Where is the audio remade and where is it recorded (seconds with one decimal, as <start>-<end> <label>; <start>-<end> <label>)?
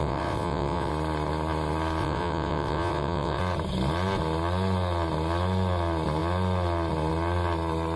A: 0.0-0.9 remade; 0.9-2.0 recorded; 2.0-3.4 remade; 3.4-8.0 recorded